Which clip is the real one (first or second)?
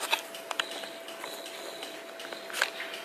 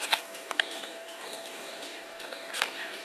first